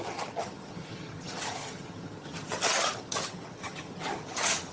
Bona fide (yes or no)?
no